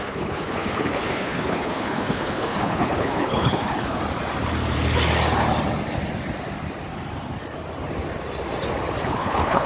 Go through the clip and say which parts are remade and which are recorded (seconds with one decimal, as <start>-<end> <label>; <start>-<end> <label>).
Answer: 0.0-4.0 remade; 4.0-9.0 recorded; 9.0-9.7 remade